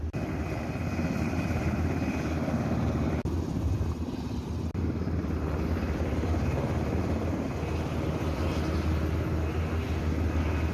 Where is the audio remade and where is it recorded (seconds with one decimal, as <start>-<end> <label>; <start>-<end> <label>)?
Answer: 0.0-10.7 recorded